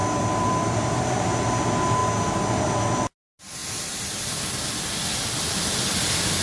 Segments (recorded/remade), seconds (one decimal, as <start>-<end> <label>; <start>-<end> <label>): 0.0-1.0 remade; 1.0-3.6 recorded; 3.6-5.6 remade; 5.6-6.4 recorded